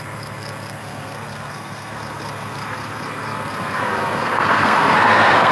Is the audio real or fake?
fake